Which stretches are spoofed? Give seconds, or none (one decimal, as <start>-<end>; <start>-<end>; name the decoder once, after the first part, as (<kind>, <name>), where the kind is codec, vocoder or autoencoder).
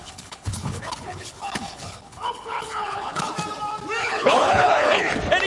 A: 0.0-3.3 (codec, HILCodec); 4.0-5.1